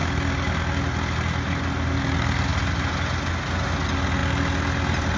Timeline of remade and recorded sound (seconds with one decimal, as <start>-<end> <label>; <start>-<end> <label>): 0.0-5.2 recorded